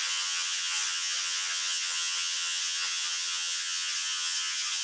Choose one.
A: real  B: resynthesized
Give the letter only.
B